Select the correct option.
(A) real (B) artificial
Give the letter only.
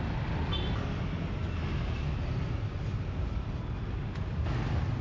A